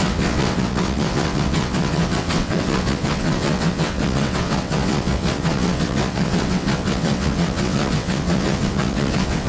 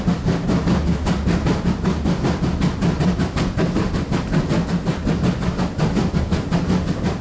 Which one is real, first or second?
second